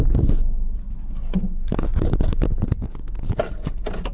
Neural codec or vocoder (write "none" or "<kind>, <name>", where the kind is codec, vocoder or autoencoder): none